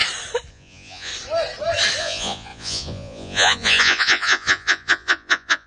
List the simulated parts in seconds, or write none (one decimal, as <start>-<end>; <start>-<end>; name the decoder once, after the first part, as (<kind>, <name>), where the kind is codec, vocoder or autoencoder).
0.5-1.1 (vocoder, Vocos); 2.0-5.7